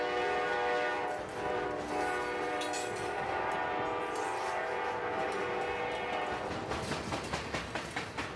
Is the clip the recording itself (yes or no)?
yes